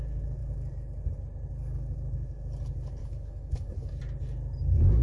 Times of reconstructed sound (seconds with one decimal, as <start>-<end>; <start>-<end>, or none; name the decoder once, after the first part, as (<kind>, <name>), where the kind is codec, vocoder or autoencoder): 3.0-4.0 (codec, DAC)